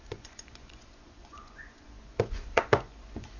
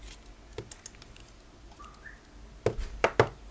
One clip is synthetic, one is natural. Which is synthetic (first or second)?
first